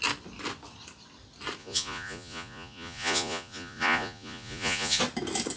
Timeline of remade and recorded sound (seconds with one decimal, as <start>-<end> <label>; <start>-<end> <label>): 0.0-1.6 recorded; 1.6-5.0 remade; 5.0-5.6 recorded